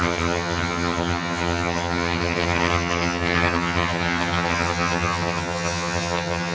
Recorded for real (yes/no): no